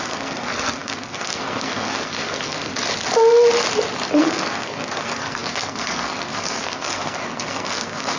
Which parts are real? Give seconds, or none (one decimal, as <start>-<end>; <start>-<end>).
2.7-4.2